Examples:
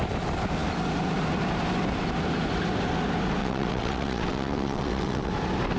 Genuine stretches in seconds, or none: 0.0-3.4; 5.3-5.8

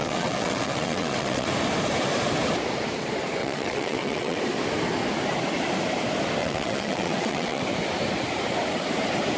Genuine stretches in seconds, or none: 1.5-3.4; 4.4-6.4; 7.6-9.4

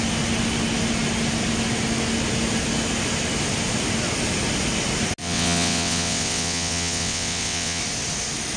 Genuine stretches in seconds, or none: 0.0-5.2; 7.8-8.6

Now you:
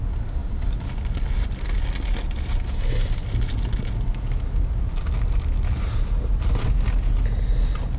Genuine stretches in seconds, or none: 0.0-8.0

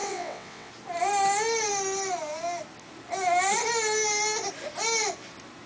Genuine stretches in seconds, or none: 0.7-5.7

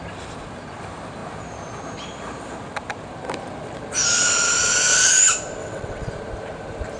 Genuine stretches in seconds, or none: 0.0-5.6; 6.1-7.0

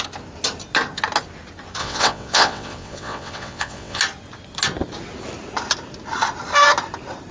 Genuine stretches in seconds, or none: 0.0-1.8; 4.0-7.3